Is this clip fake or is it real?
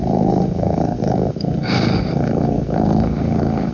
fake